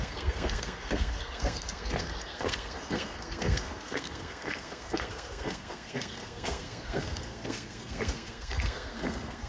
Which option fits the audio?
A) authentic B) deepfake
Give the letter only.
B